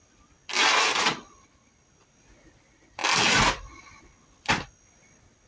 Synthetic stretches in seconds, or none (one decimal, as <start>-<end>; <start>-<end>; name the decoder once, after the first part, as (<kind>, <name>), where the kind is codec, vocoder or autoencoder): none